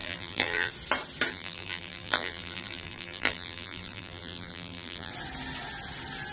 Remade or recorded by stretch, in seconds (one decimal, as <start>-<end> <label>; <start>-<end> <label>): 0.0-0.7 remade; 0.7-1.3 recorded; 1.3-5.1 remade; 5.1-6.3 recorded

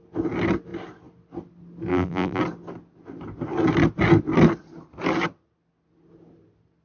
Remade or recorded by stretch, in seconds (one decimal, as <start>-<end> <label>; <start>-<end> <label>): 0.0-1.9 recorded; 1.9-2.4 remade; 2.4-6.8 recorded